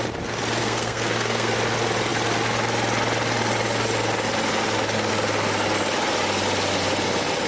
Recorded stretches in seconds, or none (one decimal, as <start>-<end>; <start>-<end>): 0.0-0.6; 1.5-7.5

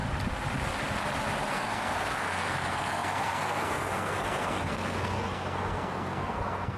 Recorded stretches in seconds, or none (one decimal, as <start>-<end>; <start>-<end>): 0.0-1.5

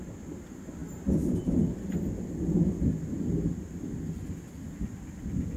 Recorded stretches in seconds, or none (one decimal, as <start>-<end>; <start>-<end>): 0.0-5.6

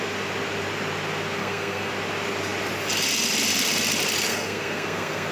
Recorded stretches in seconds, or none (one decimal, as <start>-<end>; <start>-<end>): 0.0-1.4; 1.9-4.3

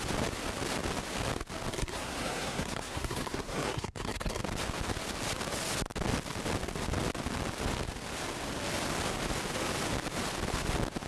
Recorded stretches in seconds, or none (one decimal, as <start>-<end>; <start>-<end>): 0.0-1.7; 4.4-11.1